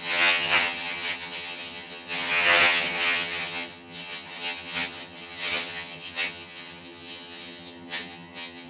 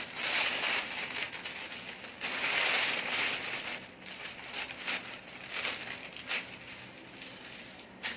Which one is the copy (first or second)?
first